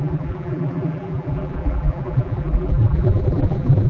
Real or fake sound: fake